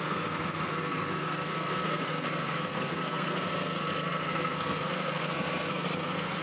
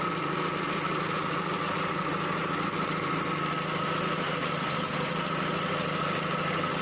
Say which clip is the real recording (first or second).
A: second